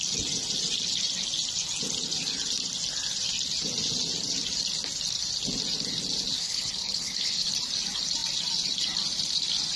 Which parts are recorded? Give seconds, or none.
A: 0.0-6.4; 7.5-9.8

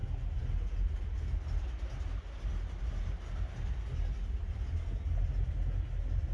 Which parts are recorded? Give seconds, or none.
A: 0.0-6.3

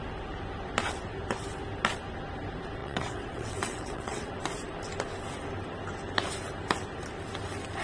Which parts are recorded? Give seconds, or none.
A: 0.0-2.8; 4.3-7.8

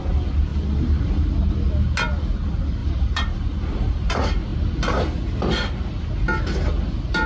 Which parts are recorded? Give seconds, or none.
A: 0.0-2.8; 4.1-7.3